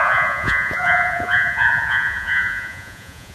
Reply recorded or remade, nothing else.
remade